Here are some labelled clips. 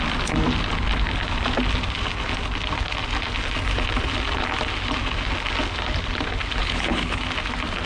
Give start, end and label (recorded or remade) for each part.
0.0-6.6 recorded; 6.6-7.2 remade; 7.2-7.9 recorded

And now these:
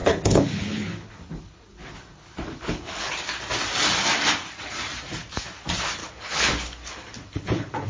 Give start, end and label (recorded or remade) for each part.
0.0-3.1 remade; 3.1-6.0 recorded; 6.0-7.9 remade

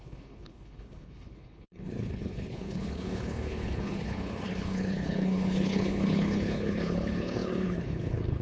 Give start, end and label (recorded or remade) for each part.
0.0-8.4 remade

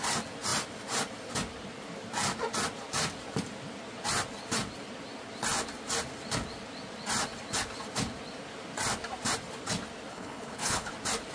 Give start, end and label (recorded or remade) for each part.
0.0-10.1 recorded; 10.1-10.9 remade; 10.9-11.3 recorded

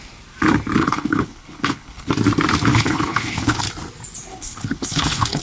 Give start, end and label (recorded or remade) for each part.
0.0-0.8 recorded; 0.8-2.1 remade; 2.1-2.7 recorded; 2.7-3.6 remade; 3.6-4.3 recorded; 4.3-5.4 remade

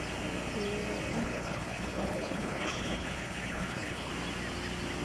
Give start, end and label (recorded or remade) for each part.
0.0-1.1 recorded; 1.1-4.1 remade; 4.1-5.0 recorded

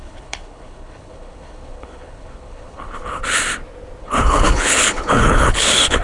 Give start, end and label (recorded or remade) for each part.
0.0-3.2 remade; 3.2-4.0 recorded; 4.0-6.0 remade

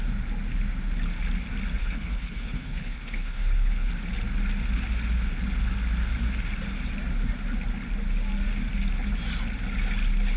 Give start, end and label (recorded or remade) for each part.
0.0-1.8 recorded; 1.8-3.9 remade; 3.9-10.4 recorded